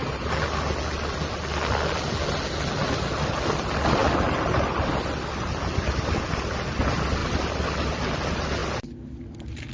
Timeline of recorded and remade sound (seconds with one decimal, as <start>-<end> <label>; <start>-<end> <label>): 0.0-9.7 recorded

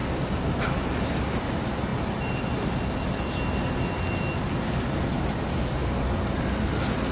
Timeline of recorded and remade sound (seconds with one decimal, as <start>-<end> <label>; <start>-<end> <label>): 0.0-7.1 recorded